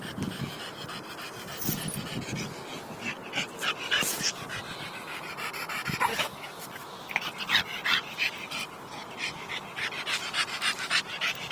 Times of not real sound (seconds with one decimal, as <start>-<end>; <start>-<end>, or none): 6.1-7.3